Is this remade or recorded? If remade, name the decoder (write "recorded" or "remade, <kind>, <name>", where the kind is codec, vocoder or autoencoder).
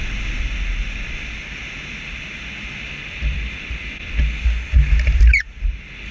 recorded